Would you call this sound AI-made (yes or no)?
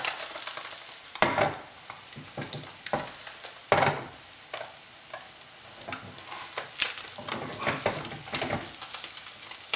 no